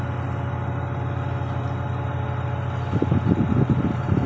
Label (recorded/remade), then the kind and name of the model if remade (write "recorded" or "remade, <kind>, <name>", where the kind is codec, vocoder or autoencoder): recorded